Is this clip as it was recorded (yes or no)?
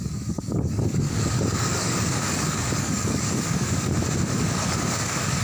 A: no